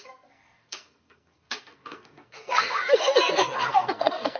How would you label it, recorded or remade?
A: remade